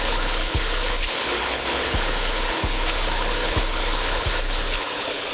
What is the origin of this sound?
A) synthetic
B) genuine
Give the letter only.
A